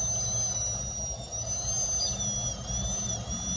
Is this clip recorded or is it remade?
recorded